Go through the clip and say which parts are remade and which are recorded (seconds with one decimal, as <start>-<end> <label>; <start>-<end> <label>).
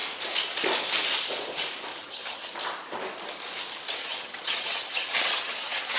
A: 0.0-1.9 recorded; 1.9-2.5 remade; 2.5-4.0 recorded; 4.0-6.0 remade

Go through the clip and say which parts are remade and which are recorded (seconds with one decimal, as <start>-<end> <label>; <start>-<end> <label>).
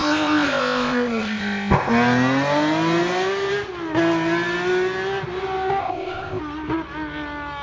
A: 0.0-1.9 remade; 1.9-5.8 recorded; 5.8-6.4 remade; 6.4-7.6 recorded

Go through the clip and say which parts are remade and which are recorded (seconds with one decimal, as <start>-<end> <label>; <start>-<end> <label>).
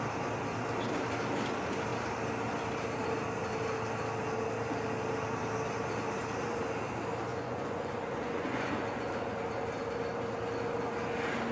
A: 0.0-7.3 recorded; 7.3-9.1 remade; 9.1-11.5 recorded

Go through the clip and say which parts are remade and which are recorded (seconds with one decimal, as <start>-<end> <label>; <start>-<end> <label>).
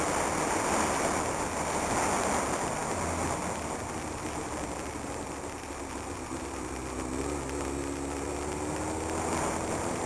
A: 0.0-10.1 recorded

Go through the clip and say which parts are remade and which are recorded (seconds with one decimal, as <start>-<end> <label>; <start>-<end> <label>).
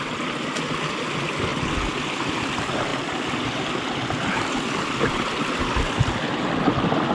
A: 0.0-7.1 recorded